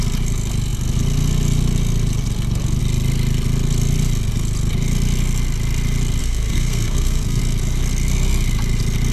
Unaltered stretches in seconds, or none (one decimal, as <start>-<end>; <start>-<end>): 0.0-6.2; 7.4-9.1